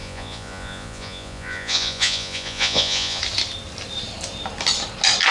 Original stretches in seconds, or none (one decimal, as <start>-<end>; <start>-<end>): 3.2-5.3